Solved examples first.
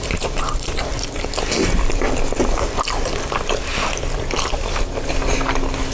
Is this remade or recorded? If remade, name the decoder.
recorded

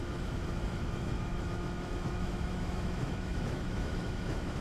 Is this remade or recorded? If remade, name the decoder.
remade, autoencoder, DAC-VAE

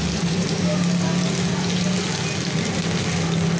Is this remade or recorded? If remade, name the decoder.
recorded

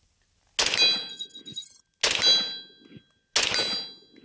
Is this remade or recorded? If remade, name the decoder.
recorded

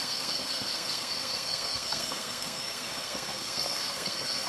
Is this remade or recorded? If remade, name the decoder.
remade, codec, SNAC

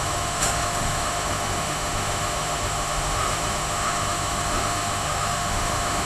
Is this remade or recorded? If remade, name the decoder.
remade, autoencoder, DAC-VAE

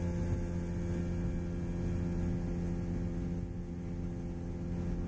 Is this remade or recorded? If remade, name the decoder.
recorded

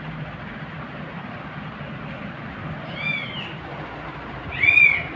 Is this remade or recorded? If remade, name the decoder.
recorded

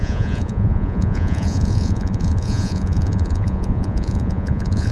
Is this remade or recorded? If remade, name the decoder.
remade, vocoder, Vocos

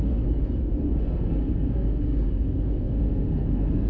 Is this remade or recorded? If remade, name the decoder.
remade, codec, SNAC